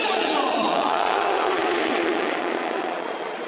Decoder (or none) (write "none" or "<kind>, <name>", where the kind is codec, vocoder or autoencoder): vocoder, Vocos